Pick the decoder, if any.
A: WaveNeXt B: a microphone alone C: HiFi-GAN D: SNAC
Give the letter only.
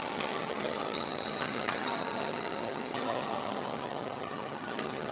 C